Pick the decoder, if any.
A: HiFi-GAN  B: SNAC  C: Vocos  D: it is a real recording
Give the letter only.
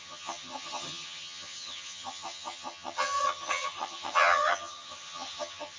A